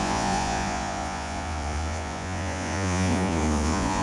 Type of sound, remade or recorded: remade